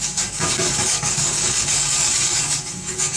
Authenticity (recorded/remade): remade